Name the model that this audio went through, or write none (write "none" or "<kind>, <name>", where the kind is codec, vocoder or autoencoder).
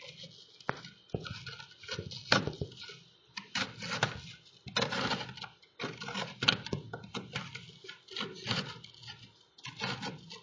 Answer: none